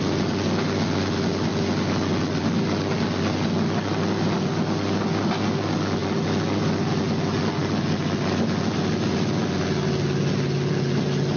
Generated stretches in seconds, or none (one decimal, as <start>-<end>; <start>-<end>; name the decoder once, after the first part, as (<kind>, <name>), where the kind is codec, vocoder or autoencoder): none